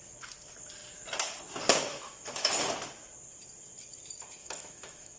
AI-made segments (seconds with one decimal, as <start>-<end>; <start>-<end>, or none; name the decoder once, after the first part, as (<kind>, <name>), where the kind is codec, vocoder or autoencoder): 1.9-2.5 (autoencoder, DAC-VAE); 4.4-5.2